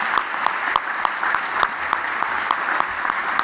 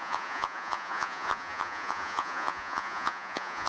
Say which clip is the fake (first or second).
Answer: second